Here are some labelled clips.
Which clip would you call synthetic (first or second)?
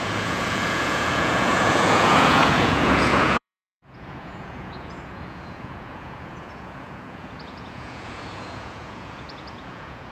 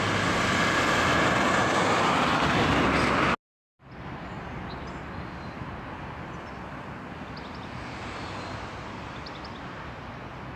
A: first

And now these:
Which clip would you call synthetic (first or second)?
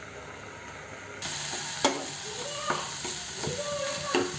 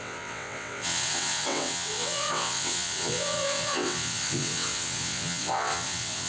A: second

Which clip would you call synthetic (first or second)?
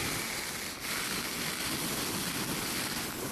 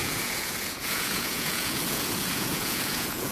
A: second